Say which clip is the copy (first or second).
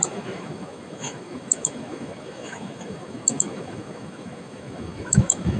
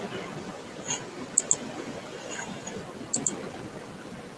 first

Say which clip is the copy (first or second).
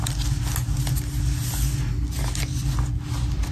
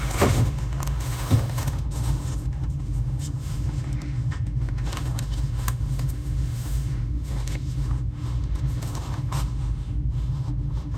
second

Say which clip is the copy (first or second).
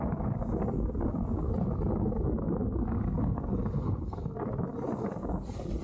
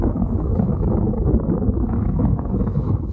second